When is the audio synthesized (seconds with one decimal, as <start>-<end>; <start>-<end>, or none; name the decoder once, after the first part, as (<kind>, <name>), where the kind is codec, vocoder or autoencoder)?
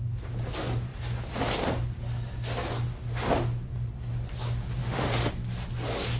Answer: 4.8-5.3 (autoencoder, DAC-VAE)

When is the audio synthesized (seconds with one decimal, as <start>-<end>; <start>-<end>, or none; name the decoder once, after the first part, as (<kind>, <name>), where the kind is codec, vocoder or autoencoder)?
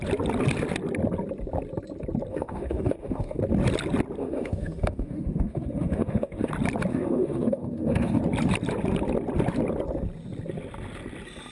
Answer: 2.3-3.4 (autoencoder, DAC-VAE); 4.2-6.5; 6.9-8.2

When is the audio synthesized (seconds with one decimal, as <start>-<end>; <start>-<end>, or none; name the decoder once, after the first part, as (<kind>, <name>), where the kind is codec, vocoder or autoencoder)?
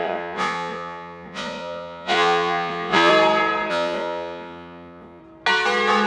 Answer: 0.0-3.1 (vocoder, Vocos); 3.7-5.2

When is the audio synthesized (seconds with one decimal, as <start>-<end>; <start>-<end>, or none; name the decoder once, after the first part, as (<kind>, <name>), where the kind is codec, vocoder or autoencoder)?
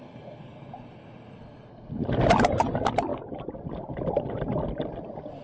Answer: 0.0-3.1 (vocoder, BigVGAN v2); 4.8-5.4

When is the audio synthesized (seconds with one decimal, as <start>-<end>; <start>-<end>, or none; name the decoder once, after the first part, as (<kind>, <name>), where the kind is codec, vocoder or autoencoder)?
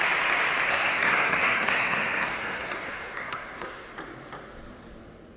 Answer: 0.7-3.9 (codec, SNAC)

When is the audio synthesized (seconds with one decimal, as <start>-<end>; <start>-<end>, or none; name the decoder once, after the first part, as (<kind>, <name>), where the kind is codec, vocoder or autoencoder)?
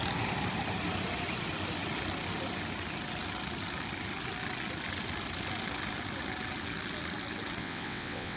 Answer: 7.6-8.4 (vocoder, WaveNeXt)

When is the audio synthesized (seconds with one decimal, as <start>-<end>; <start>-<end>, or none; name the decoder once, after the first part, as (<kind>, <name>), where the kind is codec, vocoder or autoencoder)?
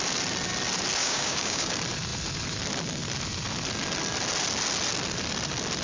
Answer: 1.0-1.7 (codec, DAC)